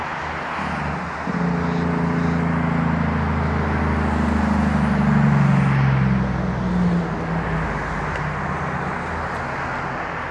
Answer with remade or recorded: recorded